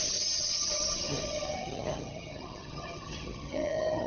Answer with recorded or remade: remade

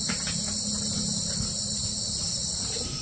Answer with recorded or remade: recorded